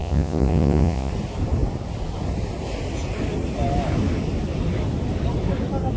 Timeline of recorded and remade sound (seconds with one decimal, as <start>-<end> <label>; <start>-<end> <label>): 0.0-1.1 remade; 1.1-6.0 recorded